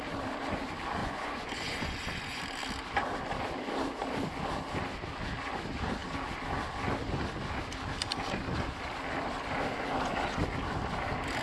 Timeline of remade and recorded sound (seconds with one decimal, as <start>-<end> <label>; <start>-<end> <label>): 0.0-1.0 recorded; 1.0-2.4 remade; 2.4-11.4 recorded